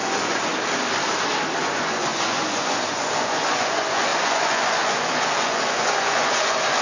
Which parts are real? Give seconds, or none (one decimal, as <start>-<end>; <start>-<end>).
0.5-1.6